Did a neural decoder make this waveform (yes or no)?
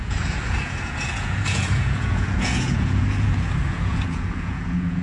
yes